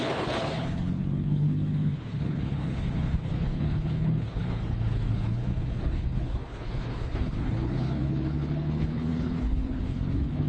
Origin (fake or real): fake